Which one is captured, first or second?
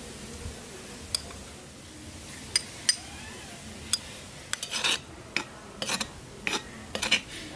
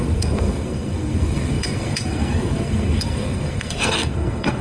first